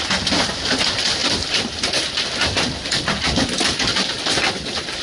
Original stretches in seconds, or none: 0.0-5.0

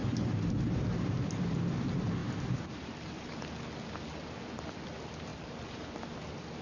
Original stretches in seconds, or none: 1.3-2.2; 3.2-5.3; 5.9-6.6

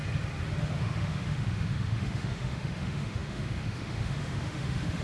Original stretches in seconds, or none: 0.0-0.6

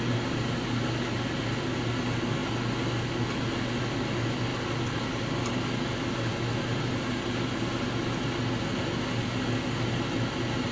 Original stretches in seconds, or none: 0.0-10.7

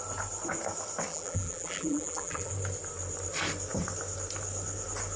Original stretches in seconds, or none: 0.0-1.1; 2.5-5.2

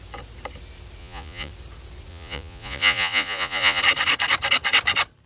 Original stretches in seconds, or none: 0.0-1.0; 1.5-2.1; 3.8-5.3